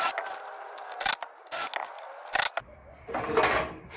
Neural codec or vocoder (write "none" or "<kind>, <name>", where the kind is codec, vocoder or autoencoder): none